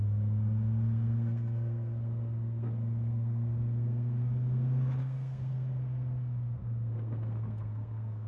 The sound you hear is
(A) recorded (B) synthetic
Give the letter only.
B